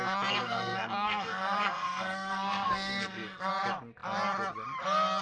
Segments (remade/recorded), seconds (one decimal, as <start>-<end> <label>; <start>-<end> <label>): 0.0-0.4 recorded; 0.4-3.5 remade; 3.5-5.2 recorded